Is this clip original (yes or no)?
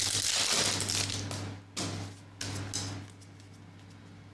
yes